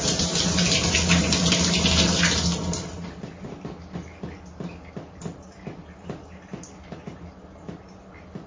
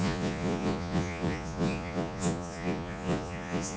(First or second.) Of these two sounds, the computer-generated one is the second